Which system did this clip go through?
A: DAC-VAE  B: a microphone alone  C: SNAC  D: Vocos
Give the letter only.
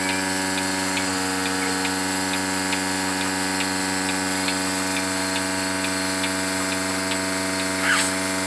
B